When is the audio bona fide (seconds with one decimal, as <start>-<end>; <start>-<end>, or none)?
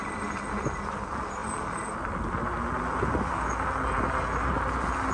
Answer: 0.0-5.1